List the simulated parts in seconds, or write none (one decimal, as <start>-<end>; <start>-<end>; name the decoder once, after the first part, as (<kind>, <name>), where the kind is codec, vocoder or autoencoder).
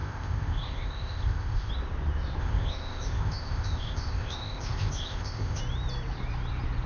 0.0-1.7 (codec, ZipCodec); 2.4-5.6